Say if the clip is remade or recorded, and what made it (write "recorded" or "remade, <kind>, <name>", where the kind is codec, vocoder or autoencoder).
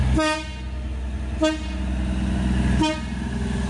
recorded